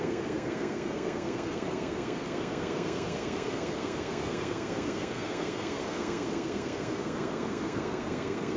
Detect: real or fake fake